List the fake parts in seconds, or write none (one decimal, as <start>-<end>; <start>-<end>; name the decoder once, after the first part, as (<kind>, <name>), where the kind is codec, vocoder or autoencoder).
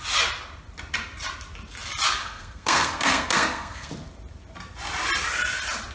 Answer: 2.2-3.9 (codec, SNAC)